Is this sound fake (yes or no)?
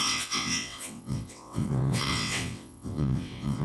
yes